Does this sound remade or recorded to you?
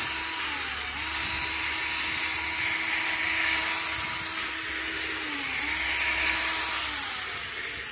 recorded